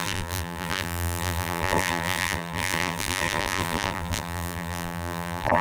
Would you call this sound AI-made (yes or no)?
yes